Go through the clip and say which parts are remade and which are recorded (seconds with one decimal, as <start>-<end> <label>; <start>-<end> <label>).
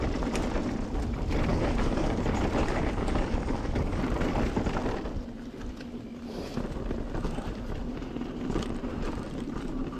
0.0-1.5 recorded; 1.5-2.2 remade; 2.2-2.6 recorded; 2.6-4.0 remade; 4.0-10.0 recorded